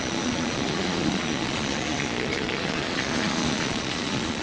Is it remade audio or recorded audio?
remade